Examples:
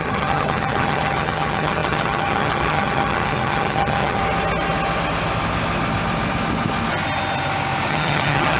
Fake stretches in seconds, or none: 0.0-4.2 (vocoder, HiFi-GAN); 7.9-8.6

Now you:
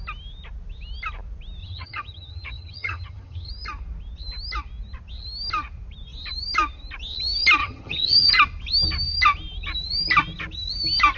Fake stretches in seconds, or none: 1.6-3.5 (vocoder, HiFi-GAN); 7.6-8.3

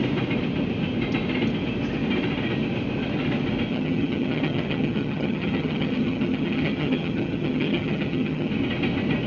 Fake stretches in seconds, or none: 3.7-8.5 (vocoder, HiFi-GAN)

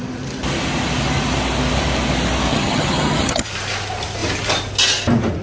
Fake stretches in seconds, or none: 2.5-3.5 (vocoder, HiFi-GAN)

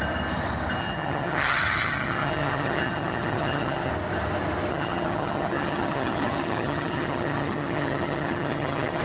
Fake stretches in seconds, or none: 0.8-3.9 (vocoder, HiFi-GAN); 4.7-9.0

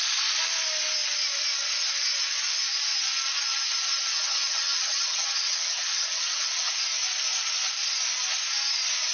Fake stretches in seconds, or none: 4.1-6.7 (vocoder, HiFi-GAN)

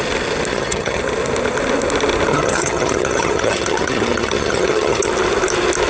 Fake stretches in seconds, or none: 0.5-1.0 (vocoder, HiFi-GAN); 2.3-5.1